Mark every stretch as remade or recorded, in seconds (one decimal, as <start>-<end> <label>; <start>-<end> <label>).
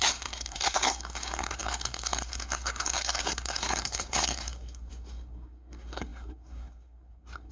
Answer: 0.0-7.5 remade